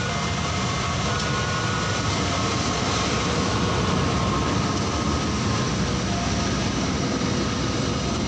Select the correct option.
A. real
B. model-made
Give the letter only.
A